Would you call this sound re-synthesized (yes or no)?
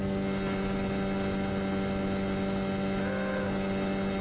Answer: no